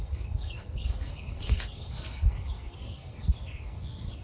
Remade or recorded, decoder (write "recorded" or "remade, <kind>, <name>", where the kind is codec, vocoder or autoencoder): remade, codec, SNAC